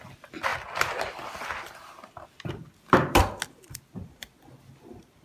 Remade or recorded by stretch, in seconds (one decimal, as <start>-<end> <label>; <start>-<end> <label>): 0.0-5.2 recorded